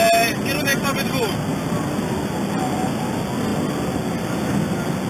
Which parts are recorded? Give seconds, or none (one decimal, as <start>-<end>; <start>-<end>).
0.0-5.1